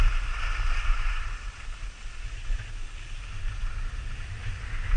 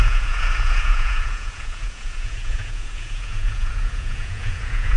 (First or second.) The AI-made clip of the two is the second